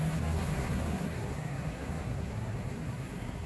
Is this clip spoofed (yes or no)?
yes